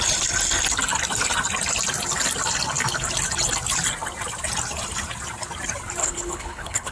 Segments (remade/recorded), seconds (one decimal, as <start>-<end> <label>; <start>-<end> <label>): 0.0-6.0 recorded; 6.0-6.9 remade